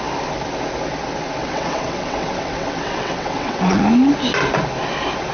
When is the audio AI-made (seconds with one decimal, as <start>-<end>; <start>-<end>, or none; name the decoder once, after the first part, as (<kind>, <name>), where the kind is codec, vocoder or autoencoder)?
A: 1.4-3.8 (vocoder, WaveNeXt)